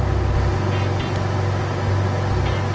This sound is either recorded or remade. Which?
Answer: recorded